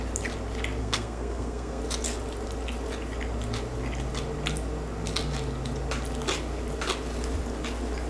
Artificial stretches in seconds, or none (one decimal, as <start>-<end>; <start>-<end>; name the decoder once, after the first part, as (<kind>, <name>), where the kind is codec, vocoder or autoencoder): 0.8-1.8 (codec, SNAC)